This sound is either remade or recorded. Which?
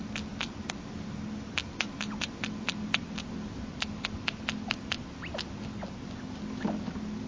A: recorded